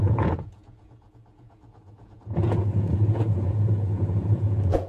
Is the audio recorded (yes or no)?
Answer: no